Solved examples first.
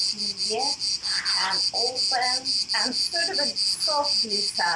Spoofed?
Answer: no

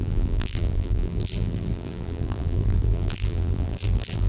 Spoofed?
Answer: yes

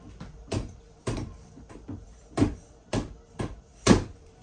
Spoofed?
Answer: yes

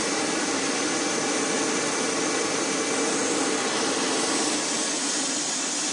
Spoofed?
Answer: no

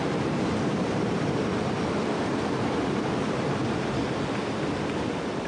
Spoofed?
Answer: yes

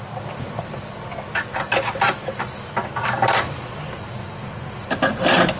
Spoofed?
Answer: yes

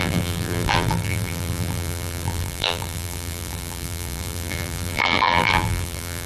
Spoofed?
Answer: yes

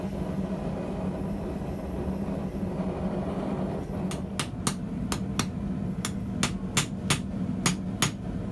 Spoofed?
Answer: no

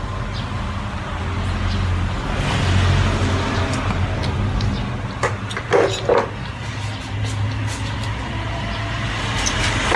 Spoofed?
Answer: no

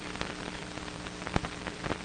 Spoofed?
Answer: yes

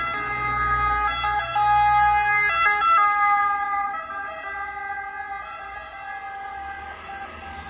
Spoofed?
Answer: no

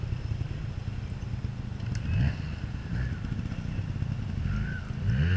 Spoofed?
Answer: no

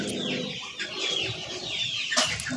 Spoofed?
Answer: no